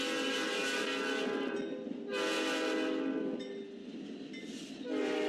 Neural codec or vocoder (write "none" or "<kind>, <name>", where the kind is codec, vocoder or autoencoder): none